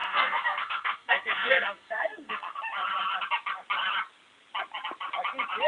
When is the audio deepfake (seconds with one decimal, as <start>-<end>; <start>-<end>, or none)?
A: 0.0-2.6